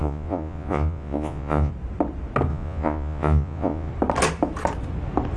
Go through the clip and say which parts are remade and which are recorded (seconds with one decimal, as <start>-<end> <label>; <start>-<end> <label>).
0.0-1.7 remade; 1.7-2.5 recorded; 2.5-3.9 remade; 3.9-5.4 recorded

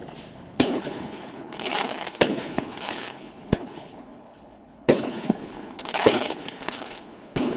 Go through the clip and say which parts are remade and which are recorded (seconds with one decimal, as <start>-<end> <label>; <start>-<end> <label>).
0.0-0.5 recorded; 0.5-7.6 remade

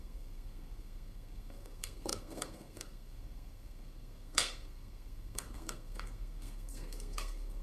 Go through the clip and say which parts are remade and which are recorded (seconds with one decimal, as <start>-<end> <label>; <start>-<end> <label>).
0.0-7.6 remade

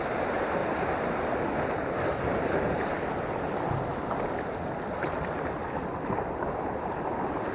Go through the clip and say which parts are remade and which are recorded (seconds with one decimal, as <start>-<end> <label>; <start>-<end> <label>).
0.0-7.5 recorded

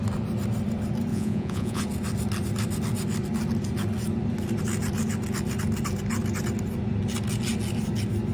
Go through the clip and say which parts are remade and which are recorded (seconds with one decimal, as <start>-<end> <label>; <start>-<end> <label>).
0.0-1.1 recorded; 1.1-1.8 remade; 1.8-8.3 recorded